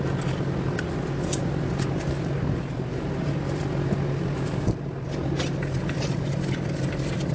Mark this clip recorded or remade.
recorded